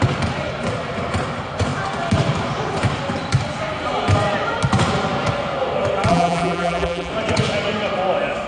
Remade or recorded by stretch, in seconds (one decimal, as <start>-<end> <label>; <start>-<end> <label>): 0.0-6.1 recorded; 6.1-7.1 remade; 7.1-8.5 recorded